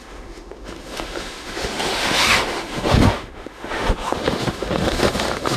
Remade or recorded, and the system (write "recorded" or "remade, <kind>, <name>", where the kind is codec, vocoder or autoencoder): remade, autoencoder, DAC-VAE